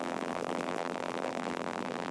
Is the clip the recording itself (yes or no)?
no